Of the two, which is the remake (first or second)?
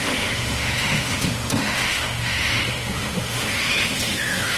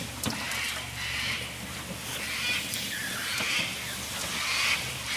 first